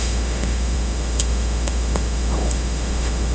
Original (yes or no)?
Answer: no